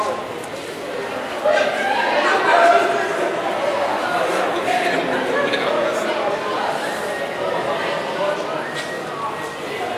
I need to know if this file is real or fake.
real